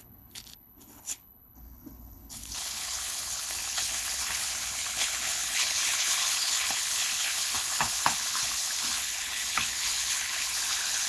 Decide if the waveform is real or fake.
fake